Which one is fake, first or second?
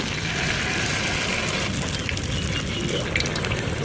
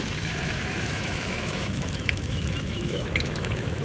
second